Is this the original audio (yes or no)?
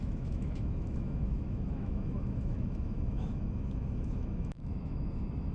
no